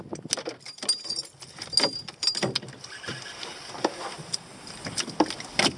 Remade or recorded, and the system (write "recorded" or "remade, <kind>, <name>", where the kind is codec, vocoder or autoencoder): recorded